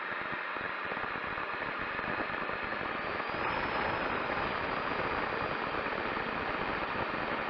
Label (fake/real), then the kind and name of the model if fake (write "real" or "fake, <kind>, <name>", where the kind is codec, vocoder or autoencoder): fake, vocoder, BigVGAN v2